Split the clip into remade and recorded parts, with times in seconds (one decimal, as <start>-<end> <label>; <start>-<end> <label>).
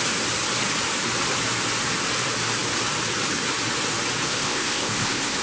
0.0-4.3 recorded; 4.3-5.4 remade